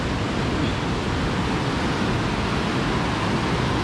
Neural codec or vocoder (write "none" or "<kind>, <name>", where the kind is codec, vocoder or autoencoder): none